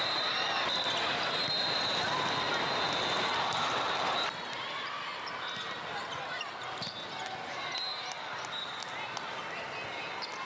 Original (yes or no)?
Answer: yes